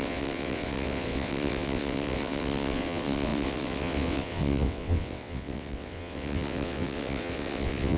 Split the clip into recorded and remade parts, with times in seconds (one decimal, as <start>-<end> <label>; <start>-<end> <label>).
0.0-8.0 remade